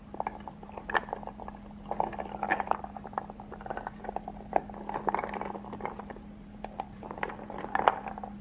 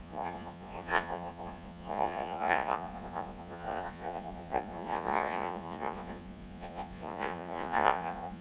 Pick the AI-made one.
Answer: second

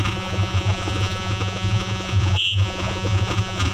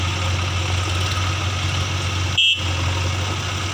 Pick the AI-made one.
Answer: first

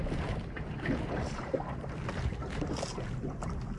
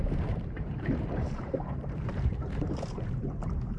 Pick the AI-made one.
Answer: second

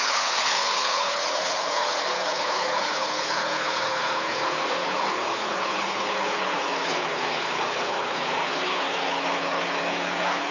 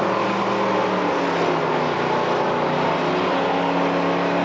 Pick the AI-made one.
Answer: first